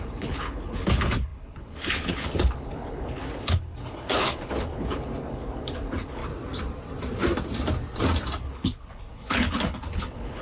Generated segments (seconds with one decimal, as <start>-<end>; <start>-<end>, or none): 0.0-6.2; 8.4-10.4